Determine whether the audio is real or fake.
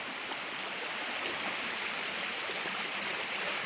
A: real